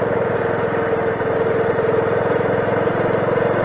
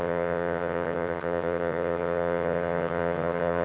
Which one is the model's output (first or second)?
second